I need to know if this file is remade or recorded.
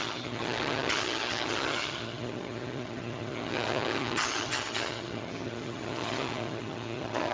remade